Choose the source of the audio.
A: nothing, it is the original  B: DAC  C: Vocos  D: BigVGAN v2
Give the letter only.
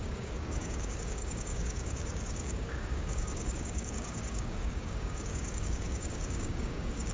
B